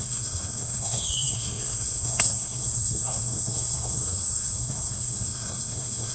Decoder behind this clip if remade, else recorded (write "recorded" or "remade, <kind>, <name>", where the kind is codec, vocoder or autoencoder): remade, codec, SNAC